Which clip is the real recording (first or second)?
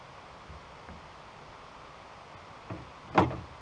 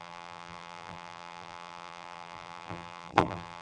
first